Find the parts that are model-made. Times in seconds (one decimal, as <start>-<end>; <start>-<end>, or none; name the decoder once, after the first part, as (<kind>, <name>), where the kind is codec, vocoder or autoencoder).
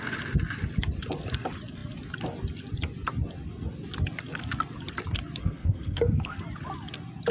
5.4-6.4 (codec, SNAC)